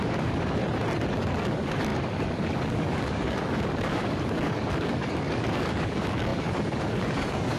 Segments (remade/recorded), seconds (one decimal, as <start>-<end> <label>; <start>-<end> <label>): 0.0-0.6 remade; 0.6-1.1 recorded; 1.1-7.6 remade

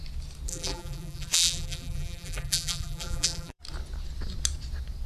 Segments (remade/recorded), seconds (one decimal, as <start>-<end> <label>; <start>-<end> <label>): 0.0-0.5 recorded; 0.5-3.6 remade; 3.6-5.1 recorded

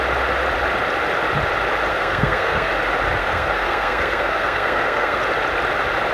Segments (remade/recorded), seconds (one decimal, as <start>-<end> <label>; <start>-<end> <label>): 0.0-1.9 recorded; 1.9-2.7 remade; 2.7-3.2 recorded; 3.2-5.2 remade; 5.2-6.1 recorded